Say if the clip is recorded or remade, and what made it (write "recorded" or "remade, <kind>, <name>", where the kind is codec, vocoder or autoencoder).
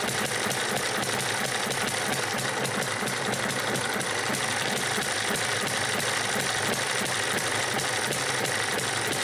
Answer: recorded